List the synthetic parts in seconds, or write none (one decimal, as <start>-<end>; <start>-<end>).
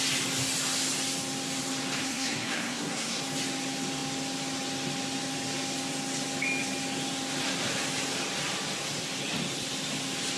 2.0-3.2